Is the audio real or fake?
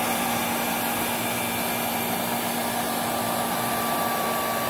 fake